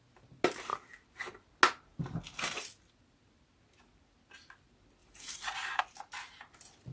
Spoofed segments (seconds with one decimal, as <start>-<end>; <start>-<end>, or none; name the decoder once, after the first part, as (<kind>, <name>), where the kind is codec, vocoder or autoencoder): 5.0-5.8 (vocoder, BigVGAN v2)